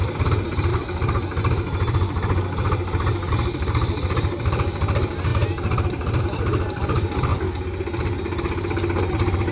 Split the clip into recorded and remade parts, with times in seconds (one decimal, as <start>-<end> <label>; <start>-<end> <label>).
0.0-0.7 remade; 0.7-3.3 recorded; 3.3-7.3 remade; 7.3-9.1 recorded; 9.1-9.5 remade